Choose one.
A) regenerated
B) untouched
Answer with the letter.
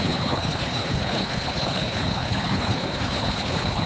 A